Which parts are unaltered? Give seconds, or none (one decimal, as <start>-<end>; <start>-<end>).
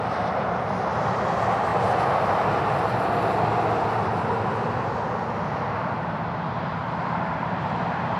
0.0-1.7; 3.1-6.8